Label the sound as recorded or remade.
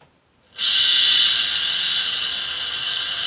recorded